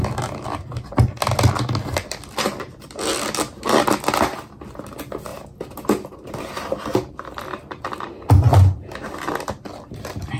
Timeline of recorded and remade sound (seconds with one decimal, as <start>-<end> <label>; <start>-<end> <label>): 0.0-10.4 recorded